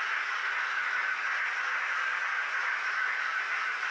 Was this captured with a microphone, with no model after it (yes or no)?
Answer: yes